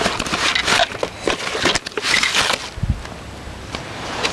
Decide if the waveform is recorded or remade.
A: recorded